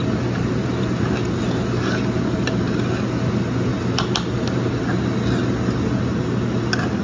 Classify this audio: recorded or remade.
recorded